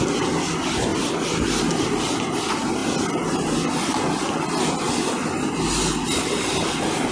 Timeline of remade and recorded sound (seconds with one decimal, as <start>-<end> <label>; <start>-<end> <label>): 0.0-7.1 recorded